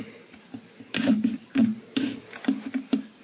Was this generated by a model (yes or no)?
no